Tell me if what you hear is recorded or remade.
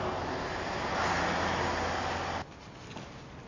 recorded